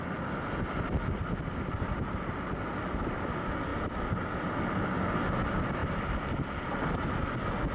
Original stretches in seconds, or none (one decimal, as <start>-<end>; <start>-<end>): 0.0-7.7